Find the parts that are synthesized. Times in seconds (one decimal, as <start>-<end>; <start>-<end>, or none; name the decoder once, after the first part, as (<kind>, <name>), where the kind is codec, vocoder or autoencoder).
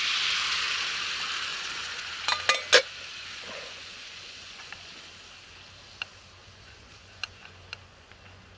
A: 1.5-2.1 (vocoder, Vocos); 3.2-4.9; 6.4-8.6